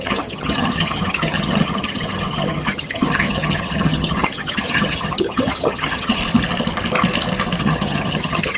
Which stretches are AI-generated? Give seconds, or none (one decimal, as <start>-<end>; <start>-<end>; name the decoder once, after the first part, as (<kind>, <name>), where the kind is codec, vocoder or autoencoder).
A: 0.0-6.2 (vocoder, HiFi-GAN); 7.6-8.6